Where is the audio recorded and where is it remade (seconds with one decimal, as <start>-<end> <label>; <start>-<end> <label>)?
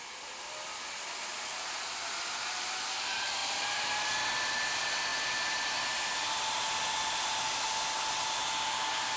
0.0-5.1 remade; 5.1-8.6 recorded; 8.6-9.2 remade